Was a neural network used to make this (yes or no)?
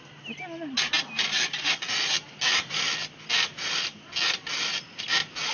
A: no